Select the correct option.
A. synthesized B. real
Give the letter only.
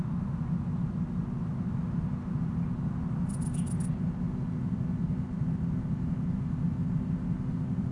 B